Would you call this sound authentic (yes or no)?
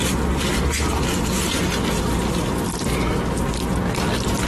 yes